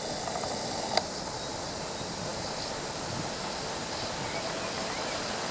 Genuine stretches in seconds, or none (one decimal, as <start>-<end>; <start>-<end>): 0.0-5.5